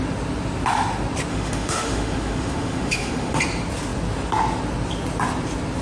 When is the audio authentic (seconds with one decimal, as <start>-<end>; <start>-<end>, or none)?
0.0-1.3; 3.4-5.8